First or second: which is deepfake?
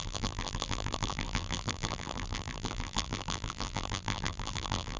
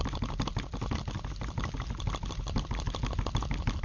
first